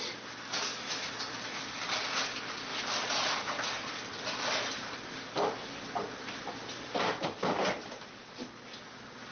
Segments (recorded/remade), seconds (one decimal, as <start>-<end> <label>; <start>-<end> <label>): 0.0-0.7 recorded; 0.7-1.4 remade; 1.4-2.7 recorded; 2.7-7.0 remade; 7.0-9.3 recorded